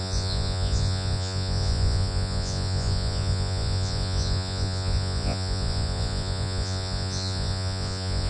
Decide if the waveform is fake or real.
fake